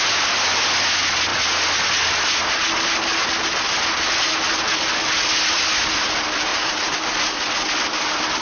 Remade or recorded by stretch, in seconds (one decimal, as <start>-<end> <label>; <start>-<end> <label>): 0.0-6.5 recorded; 6.5-7.1 remade; 7.1-8.4 recorded